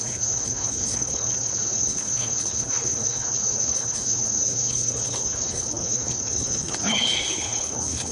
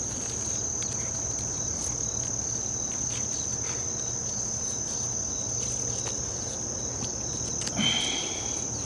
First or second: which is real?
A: second